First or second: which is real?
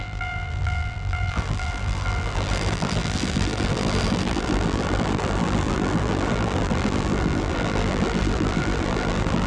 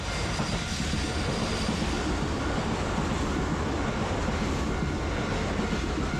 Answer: second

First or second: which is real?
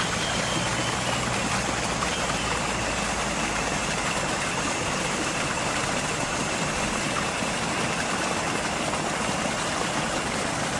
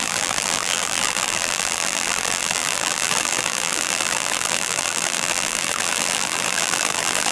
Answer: first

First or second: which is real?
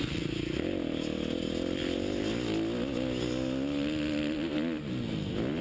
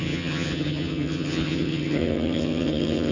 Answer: first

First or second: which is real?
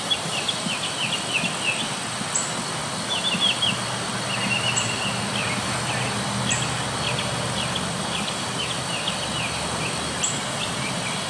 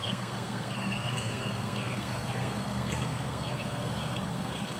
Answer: first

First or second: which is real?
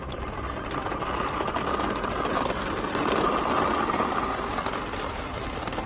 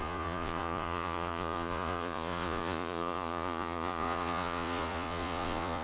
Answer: first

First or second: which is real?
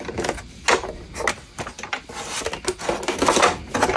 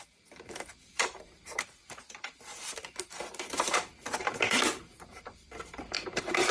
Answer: first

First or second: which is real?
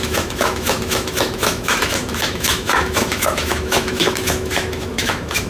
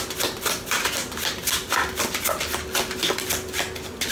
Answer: second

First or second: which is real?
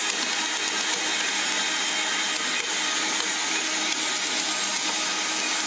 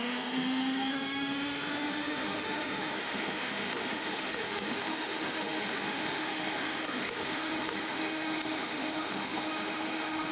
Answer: first